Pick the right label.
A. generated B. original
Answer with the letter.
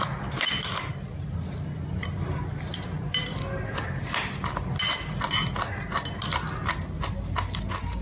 B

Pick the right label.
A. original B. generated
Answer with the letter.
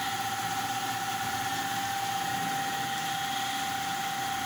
A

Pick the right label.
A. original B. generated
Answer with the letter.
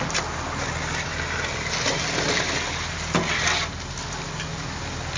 A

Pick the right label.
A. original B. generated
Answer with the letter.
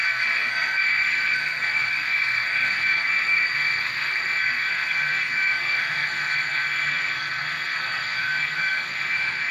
B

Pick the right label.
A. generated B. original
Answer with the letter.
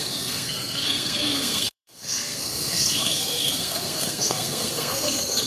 A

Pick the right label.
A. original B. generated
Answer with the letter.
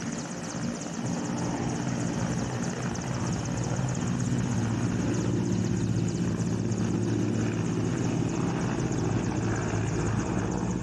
A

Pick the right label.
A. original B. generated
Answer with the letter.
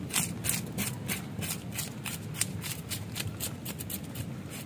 A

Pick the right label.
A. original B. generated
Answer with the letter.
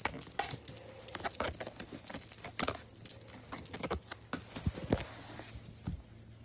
A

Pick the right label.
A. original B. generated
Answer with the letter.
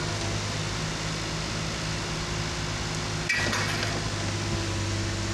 A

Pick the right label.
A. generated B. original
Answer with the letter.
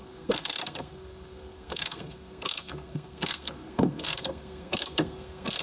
A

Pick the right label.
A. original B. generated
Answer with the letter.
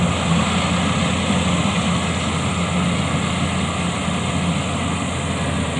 A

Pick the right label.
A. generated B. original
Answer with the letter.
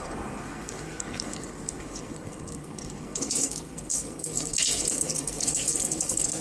A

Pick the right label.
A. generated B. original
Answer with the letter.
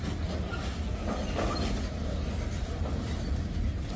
B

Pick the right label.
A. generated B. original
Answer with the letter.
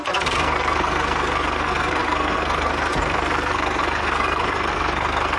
A